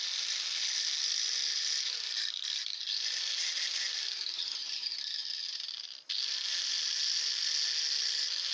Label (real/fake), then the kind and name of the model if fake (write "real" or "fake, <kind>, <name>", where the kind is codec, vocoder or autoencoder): real